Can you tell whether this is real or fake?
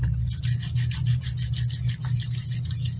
real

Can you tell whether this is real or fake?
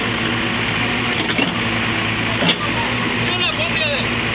real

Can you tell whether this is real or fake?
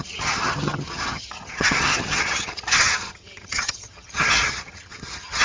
fake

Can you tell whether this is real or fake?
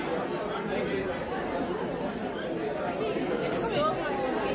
real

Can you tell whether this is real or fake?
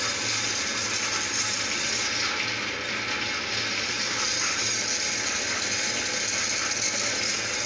real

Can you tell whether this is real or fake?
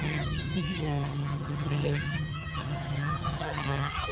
fake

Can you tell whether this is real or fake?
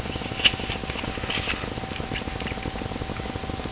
real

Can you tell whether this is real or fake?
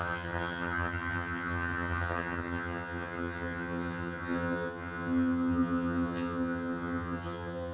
fake